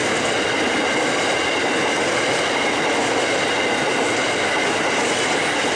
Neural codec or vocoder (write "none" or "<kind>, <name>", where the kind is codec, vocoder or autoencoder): none